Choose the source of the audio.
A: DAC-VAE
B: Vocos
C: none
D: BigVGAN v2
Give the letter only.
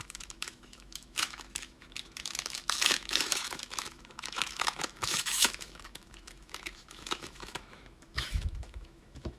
A